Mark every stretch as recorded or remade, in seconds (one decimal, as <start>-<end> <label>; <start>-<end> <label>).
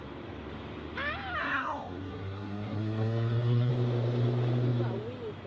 0.0-1.4 recorded; 1.4-3.7 remade; 3.7-5.5 recorded